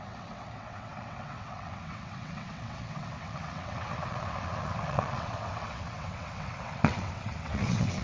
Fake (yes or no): yes